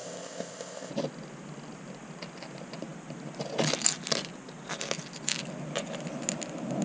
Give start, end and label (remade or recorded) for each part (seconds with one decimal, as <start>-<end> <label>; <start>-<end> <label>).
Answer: 0.0-0.9 remade; 0.9-6.8 recorded

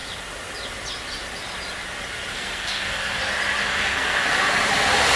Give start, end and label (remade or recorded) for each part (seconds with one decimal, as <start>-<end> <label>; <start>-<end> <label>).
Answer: 0.0-2.3 recorded; 2.3-3.2 remade; 3.2-3.6 recorded; 3.6-4.5 remade; 4.5-5.2 recorded

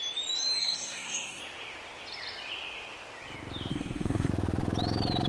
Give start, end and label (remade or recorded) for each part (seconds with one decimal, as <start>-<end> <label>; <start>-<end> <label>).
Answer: 0.0-0.6 recorded; 0.6-1.4 remade; 1.4-3.7 recorded; 3.7-4.3 remade; 4.3-5.3 recorded

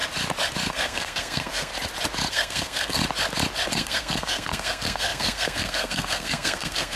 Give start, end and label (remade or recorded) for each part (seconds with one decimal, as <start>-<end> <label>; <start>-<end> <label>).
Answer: 0.0-0.7 recorded; 0.7-1.7 remade; 1.7-2.3 recorded; 2.3-3.0 remade; 3.0-3.7 recorded; 3.7-7.0 remade